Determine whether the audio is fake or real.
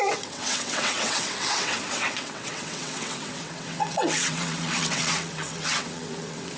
fake